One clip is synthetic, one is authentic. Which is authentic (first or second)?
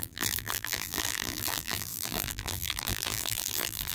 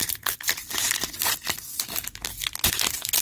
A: second